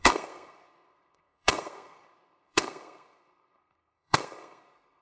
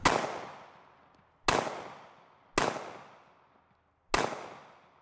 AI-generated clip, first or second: first